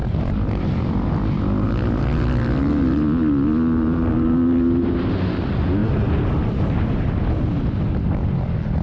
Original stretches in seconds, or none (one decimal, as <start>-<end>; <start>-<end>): 0.0-8.8

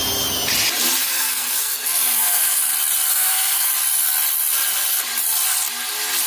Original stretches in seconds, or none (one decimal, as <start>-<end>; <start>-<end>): 0.0-1.0; 2.6-3.1; 3.7-6.3